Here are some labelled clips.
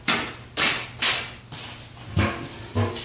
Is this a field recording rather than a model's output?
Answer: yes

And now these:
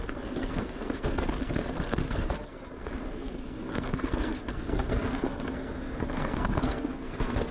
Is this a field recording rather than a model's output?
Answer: no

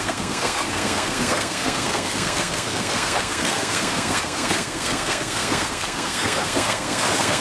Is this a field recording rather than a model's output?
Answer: no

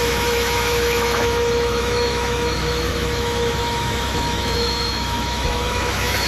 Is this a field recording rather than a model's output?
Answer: no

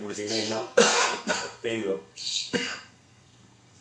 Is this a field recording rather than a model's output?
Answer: no